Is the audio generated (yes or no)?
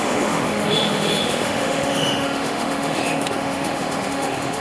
yes